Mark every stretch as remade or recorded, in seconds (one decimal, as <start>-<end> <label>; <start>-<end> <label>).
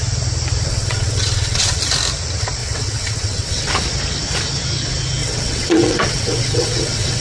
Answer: 0.0-0.7 recorded; 0.7-1.8 remade; 1.8-2.6 recorded; 2.6-3.7 remade; 3.7-5.2 recorded; 5.2-7.2 remade